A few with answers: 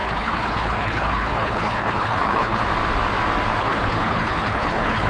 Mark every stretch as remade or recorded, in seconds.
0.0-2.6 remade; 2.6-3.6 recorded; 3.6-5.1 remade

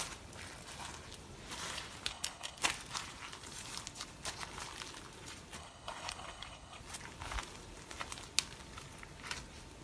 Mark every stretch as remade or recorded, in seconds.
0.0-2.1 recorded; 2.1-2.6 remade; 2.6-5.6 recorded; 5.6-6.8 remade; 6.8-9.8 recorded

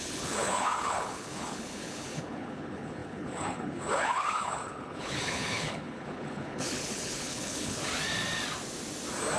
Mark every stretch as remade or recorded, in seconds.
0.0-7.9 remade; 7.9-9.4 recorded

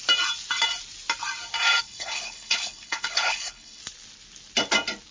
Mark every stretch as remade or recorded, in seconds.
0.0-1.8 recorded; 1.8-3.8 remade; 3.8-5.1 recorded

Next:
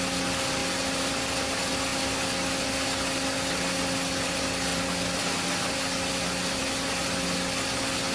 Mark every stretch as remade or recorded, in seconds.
0.0-8.1 recorded

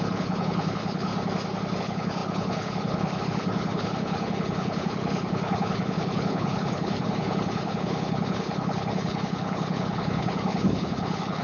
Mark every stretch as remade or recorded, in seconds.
0.0-1.1 remade; 1.1-1.8 recorded; 1.8-11.4 remade

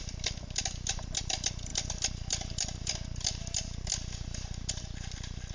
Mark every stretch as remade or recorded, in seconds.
0.0-5.5 recorded